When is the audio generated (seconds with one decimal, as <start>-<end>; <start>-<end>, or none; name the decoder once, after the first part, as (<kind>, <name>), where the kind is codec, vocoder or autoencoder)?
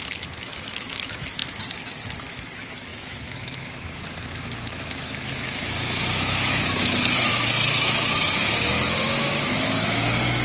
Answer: 0.0-1.4 (autoencoder, DAC-VAE); 2.2-10.4